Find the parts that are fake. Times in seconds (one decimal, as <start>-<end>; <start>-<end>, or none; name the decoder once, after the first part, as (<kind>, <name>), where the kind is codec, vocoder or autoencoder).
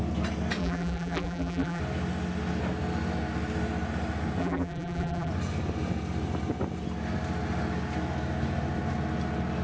0.6-1.8 (vocoder, BigVGAN v2); 4.4-5.3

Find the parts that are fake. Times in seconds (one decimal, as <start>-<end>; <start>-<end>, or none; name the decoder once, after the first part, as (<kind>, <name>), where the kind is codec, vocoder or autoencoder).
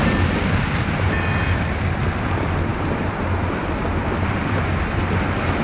none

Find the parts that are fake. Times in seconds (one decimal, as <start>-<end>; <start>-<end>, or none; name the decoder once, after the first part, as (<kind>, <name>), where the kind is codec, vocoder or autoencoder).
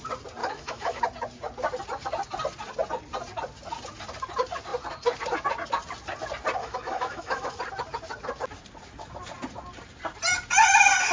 0.4-1.0 (autoencoder, DAC-VAE); 6.6-7.6